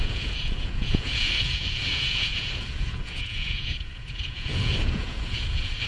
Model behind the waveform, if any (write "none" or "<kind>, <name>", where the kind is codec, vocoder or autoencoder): vocoder, Vocos